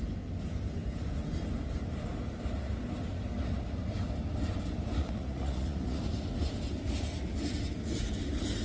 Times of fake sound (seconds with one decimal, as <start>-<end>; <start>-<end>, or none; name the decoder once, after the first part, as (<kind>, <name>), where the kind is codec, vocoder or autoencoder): 5.0-6.0 (vocoder, Vocos)